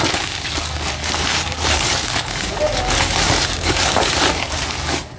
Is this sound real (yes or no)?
no